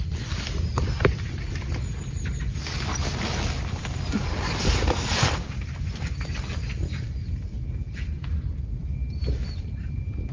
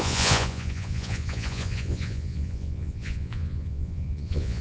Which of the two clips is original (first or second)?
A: first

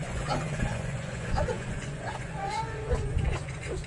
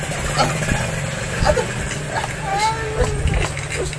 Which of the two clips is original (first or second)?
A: second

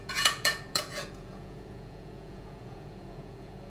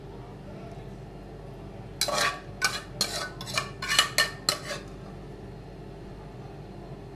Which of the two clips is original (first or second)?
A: second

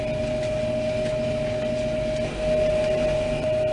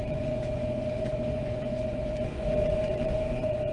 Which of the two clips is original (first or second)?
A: first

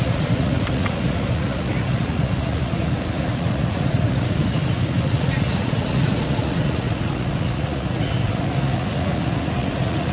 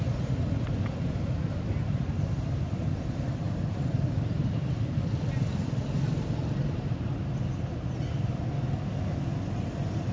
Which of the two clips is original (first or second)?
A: second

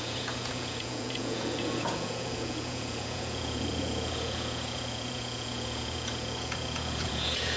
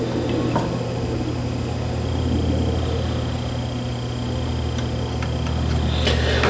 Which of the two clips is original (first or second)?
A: second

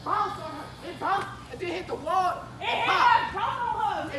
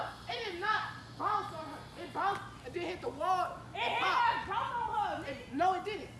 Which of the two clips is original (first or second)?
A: second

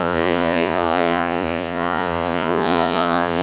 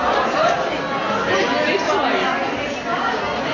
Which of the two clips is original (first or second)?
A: second